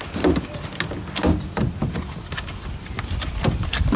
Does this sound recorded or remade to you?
recorded